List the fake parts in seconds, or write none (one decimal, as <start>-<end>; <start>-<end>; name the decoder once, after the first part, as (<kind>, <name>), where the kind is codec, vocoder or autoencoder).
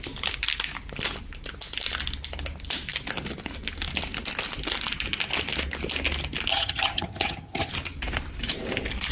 6.5-7.7 (vocoder, HiFi-GAN)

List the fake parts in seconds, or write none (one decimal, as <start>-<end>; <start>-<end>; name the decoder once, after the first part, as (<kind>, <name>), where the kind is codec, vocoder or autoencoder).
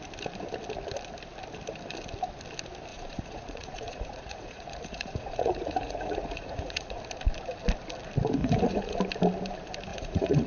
2.9-7.0 (vocoder, Vocos); 8.4-9.0; 9.9-10.5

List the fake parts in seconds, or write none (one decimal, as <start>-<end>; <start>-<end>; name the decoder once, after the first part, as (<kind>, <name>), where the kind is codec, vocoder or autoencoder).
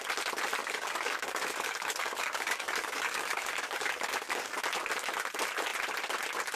0.6-4.6 (codec, DAC)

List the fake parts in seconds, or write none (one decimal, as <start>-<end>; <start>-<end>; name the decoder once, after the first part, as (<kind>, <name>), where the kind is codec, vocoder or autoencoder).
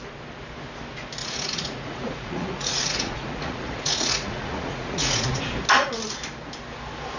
1.2-5.4 (vocoder, Vocos)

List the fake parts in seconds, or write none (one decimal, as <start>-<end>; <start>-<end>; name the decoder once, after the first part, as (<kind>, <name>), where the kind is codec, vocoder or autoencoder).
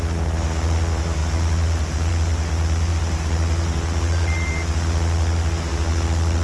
none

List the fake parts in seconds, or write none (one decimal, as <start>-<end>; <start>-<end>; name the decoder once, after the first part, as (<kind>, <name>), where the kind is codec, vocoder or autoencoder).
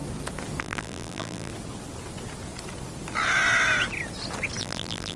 0.6-1.5 (vocoder, BigVGAN v2); 4.6-5.2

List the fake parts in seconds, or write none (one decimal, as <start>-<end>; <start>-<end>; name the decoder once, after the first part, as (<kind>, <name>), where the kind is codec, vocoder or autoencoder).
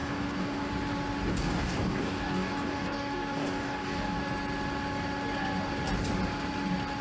0.0-0.7 (codec, DAC); 1.3-4.2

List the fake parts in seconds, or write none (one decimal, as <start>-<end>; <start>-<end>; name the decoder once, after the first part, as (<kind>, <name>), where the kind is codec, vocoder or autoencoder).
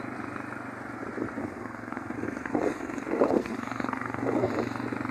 1.4-4.5 (codec, SNAC)